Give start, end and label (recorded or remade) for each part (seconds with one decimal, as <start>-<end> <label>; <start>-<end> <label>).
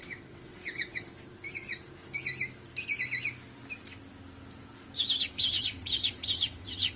0.0-1.1 remade; 1.1-5.3 recorded; 5.3-7.0 remade